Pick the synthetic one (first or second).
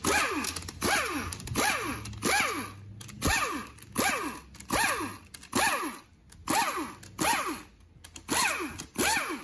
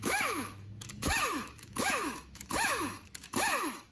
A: second